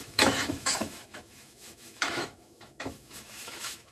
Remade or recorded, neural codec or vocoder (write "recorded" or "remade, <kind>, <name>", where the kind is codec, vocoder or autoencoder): remade, autoencoder, DAC-VAE